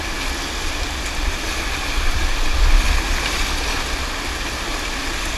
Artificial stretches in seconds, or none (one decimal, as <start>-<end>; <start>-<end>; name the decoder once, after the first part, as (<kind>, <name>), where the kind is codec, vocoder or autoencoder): none